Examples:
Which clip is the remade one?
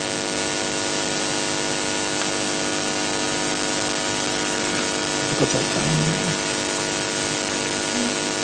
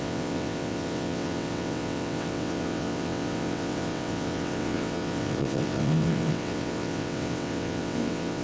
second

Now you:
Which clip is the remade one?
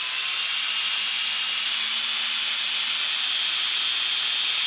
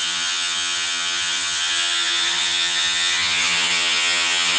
second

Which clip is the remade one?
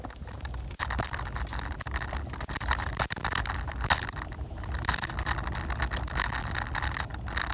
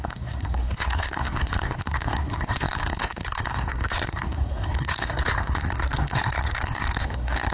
second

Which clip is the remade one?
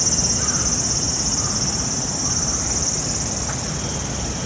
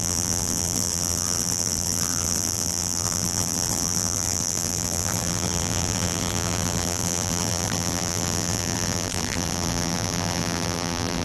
second